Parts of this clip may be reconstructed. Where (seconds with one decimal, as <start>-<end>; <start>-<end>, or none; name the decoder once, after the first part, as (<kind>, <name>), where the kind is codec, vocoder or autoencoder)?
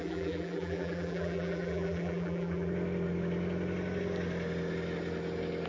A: 0.0-2.7 (vocoder, BigVGAN v2)